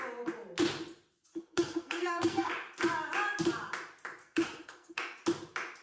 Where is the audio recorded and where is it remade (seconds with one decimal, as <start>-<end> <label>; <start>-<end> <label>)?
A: 0.0-1.3 recorded; 1.3-2.5 remade; 2.5-4.2 recorded; 4.2-5.2 remade; 5.2-5.8 recorded